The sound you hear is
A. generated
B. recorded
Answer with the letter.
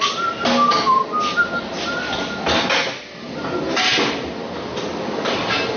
B